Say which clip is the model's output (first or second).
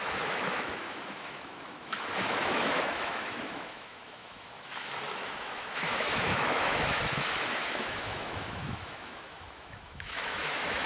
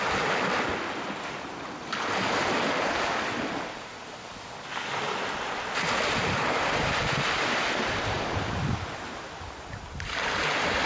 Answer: first